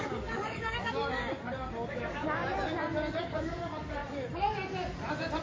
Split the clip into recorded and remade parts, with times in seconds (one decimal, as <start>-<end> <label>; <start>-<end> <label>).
0.0-1.2 remade; 1.2-1.9 recorded; 1.9-2.4 remade; 2.4-3.2 recorded; 3.2-4.0 remade; 4.0-5.4 recorded